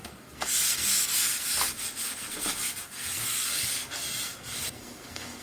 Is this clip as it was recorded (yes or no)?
no